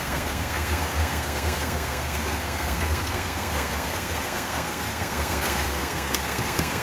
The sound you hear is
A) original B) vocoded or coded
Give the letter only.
B